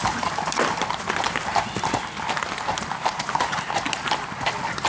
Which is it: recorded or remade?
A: recorded